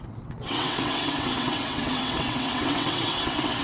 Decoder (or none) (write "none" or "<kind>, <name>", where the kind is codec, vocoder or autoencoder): vocoder, WaveNeXt